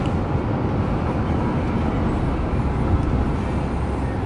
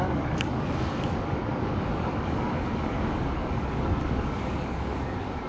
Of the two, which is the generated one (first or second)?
second